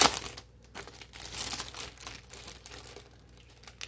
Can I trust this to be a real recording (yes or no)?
yes